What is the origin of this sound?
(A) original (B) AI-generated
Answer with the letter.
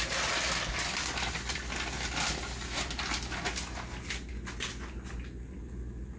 A